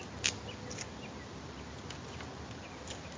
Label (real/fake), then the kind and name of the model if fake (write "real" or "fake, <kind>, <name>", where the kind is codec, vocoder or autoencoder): real